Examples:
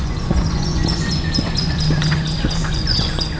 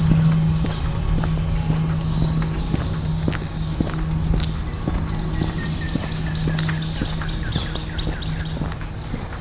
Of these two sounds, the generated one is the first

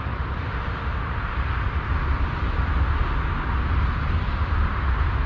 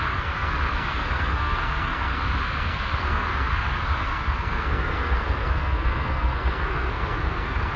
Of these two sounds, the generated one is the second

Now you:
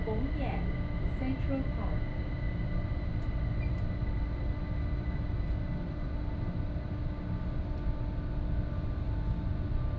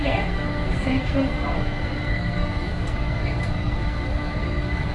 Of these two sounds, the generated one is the second